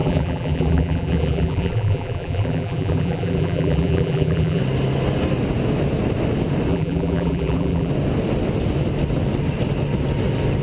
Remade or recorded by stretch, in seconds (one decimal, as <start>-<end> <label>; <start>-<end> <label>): 0.0-4.6 remade; 4.6-6.7 recorded; 6.7-7.9 remade; 7.9-10.6 recorded